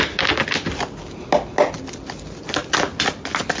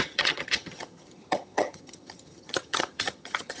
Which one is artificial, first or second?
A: second